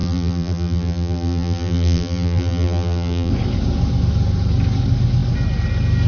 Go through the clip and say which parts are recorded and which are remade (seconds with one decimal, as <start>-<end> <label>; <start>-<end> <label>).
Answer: 0.0-3.3 remade; 3.3-6.1 recorded